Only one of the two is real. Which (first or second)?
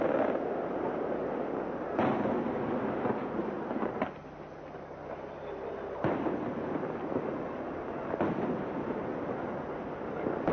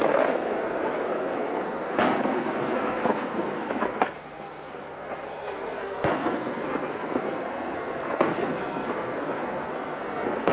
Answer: first